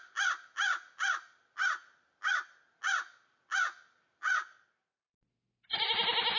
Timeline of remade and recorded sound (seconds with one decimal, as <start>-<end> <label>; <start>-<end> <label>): 0.0-6.4 recorded